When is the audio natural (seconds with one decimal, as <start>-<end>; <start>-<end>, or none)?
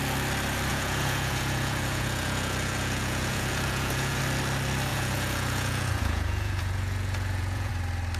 0.0-0.7; 4.2-4.9; 7.7-8.2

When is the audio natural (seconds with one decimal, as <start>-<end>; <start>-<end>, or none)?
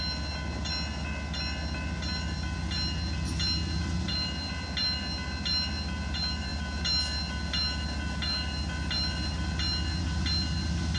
0.0-11.0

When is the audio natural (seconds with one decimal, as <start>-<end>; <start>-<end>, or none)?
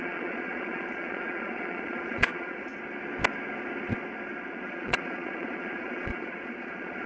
2.7-4.5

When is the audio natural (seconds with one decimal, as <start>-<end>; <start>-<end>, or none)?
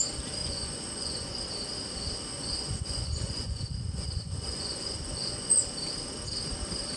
0.0-0.4; 1.4-2.3; 5.6-7.0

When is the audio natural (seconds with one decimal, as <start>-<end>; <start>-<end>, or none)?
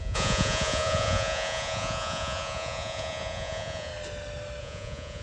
3.9-4.6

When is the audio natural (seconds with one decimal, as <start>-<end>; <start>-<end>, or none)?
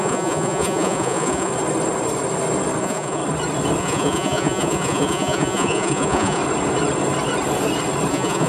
1.5-2.8; 3.2-3.8; 6.4-8.1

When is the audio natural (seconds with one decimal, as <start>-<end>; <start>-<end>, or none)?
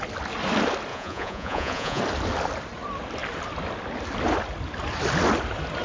0.0-0.9; 2.0-5.8